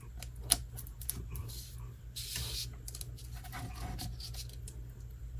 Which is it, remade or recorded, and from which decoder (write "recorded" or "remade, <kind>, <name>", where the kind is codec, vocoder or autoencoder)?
recorded